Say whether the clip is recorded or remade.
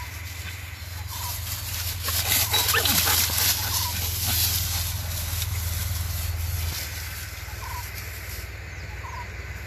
recorded